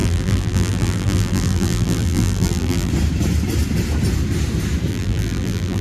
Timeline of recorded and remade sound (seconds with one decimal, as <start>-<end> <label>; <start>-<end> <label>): 0.0-2.9 remade; 2.9-4.9 recorded; 4.9-5.8 remade

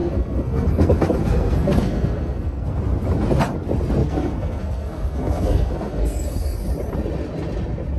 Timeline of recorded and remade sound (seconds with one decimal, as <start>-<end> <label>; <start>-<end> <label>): 0.0-2.8 remade; 2.8-4.0 recorded; 4.0-6.7 remade; 6.7-8.0 recorded